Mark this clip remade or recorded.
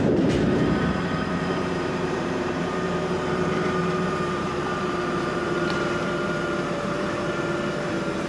remade